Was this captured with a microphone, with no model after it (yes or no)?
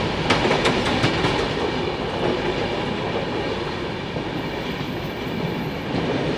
yes